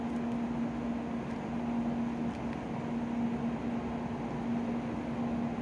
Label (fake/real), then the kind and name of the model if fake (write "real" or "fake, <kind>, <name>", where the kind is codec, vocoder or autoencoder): real